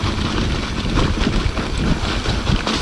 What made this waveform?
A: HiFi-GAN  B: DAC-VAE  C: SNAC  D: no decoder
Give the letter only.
D